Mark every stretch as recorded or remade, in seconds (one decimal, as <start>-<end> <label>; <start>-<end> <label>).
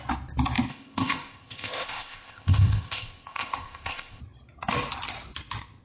0.0-0.7 recorded; 0.7-4.2 remade; 4.2-5.8 recorded